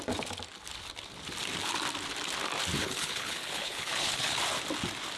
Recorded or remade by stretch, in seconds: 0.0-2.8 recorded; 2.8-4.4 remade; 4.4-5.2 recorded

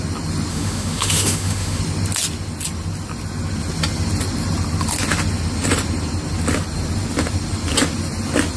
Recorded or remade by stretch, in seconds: 0.0-0.5 recorded; 0.5-1.8 remade; 1.8-8.6 recorded

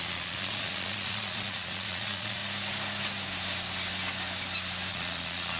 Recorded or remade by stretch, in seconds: 0.0-2.4 remade; 2.4-4.9 recorded; 4.9-5.6 remade

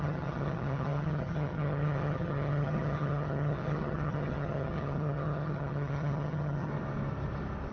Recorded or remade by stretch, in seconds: 0.0-6.7 remade; 6.7-7.7 recorded